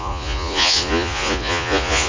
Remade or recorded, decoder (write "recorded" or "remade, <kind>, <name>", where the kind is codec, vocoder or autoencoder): remade, vocoder, Vocos